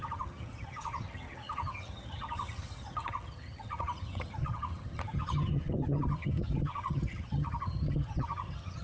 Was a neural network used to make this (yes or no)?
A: yes